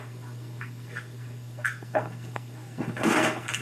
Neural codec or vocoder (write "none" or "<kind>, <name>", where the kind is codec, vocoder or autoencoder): codec, SNAC